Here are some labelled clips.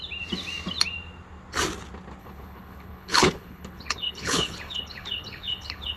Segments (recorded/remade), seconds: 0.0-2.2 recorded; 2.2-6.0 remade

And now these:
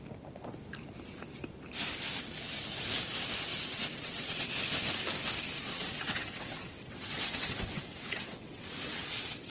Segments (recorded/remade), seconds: 0.0-3.5 recorded; 3.5-4.5 remade; 4.5-5.7 recorded; 5.7-9.5 remade

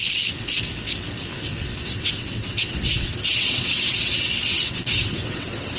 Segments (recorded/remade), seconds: 0.0-1.9 recorded; 1.9-5.8 remade

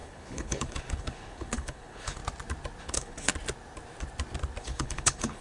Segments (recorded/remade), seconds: 0.0-2.2 remade; 2.2-2.8 recorded; 2.8-3.3 remade; 3.3-4.6 recorded; 4.6-5.4 remade

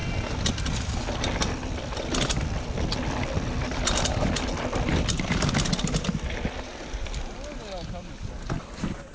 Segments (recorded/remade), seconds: 0.0-9.1 recorded